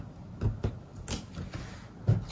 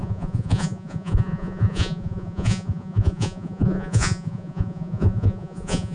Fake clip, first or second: second